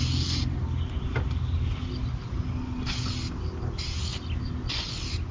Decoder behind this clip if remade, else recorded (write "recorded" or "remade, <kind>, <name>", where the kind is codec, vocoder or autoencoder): recorded